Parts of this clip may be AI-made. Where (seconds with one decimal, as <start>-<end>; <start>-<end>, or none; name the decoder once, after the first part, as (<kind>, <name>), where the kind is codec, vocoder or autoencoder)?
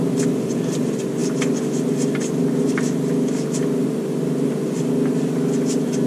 none